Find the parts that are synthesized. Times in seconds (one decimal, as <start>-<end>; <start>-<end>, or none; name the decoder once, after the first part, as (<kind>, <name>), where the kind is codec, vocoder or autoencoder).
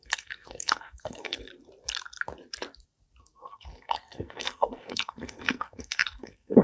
0.0-1.5 (codec, SNAC); 3.2-6.6